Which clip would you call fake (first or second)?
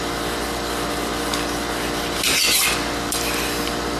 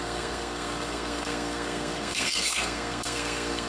second